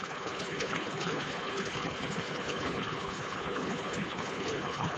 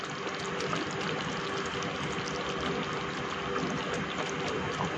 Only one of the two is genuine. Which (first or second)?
second